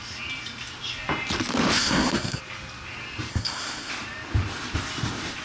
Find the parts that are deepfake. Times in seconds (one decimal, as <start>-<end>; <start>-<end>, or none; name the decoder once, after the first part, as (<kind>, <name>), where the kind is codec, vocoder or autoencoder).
1.8-2.4 (codec, SNAC); 3.3-3.9